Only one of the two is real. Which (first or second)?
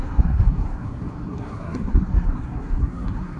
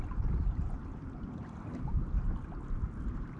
second